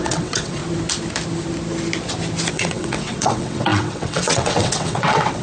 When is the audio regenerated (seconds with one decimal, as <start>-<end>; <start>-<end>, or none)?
0.0-0.6; 2.5-5.4